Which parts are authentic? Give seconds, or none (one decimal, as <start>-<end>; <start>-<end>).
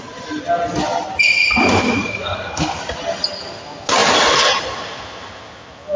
0.0-2.0; 2.8-6.0